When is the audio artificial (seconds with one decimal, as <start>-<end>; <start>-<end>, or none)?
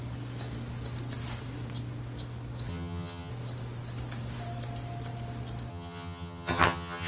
2.7-3.3; 5.7-7.1